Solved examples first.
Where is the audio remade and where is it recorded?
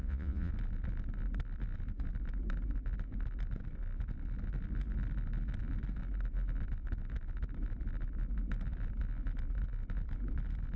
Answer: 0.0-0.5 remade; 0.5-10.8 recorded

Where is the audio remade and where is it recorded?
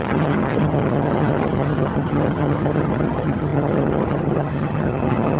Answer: 0.0-5.4 remade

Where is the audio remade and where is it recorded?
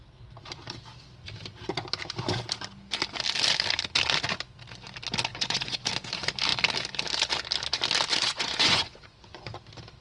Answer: 0.0-5.3 recorded; 5.3-5.9 remade; 5.9-8.1 recorded; 8.1-9.6 remade; 9.6-10.0 recorded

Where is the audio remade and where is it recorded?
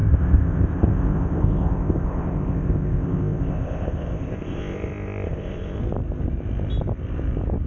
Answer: 0.0-5.8 remade; 5.8-7.7 recorded